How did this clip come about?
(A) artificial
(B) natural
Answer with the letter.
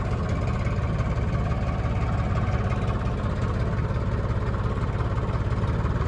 B